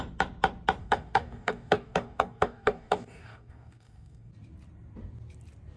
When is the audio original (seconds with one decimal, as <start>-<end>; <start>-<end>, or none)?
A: 0.0-0.8; 4.3-5.8